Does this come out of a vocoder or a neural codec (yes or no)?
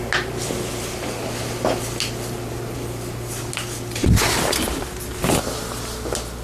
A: no